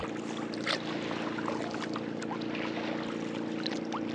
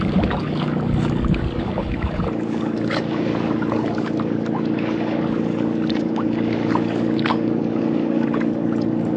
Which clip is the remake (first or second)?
second